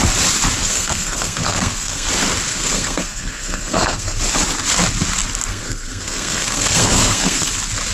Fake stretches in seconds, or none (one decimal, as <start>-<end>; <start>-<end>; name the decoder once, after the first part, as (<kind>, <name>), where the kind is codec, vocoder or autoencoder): 0.6-2.1 (codec, SNAC); 2.5-4.2; 5.5-7.5